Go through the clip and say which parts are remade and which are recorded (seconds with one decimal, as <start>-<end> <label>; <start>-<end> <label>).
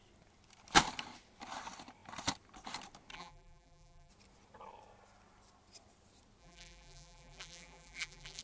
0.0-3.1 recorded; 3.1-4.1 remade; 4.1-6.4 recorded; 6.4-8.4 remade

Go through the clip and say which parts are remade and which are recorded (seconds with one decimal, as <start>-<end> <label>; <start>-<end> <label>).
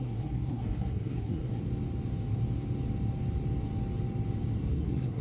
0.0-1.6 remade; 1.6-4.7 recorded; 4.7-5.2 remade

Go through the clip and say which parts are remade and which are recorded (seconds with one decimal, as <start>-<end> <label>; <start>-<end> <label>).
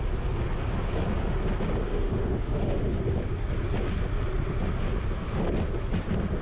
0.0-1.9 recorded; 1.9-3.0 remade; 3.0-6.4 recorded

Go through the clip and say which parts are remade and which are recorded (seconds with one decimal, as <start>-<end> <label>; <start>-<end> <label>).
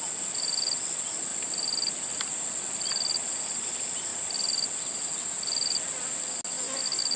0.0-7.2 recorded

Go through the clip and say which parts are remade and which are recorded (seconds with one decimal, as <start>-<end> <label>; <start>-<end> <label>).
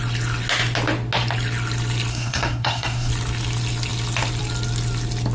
0.0-2.1 recorded; 2.1-3.1 remade; 3.1-5.3 recorded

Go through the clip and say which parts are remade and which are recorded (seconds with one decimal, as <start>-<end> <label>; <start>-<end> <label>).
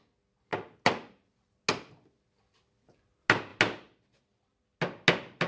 0.0-5.5 recorded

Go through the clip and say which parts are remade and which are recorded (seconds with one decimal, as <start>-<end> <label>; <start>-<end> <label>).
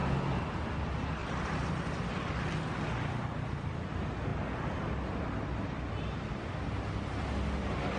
0.0-1.2 recorded; 1.2-2.2 remade; 2.2-8.0 recorded